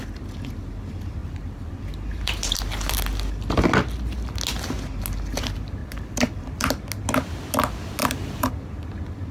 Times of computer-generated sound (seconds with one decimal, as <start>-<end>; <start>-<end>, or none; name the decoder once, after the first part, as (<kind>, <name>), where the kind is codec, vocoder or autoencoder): 1.2-2.6 (vocoder, BigVGAN v2); 5.8-6.5; 8.0-8.5